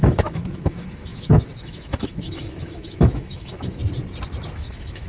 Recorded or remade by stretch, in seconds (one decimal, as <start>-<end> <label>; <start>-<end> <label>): 0.0-3.8 remade; 3.8-4.5 recorded; 4.5-5.1 remade